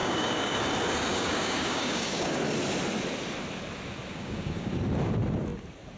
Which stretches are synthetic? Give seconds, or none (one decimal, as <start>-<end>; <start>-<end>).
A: 0.0-0.6; 1.1-2.4; 4.1-4.7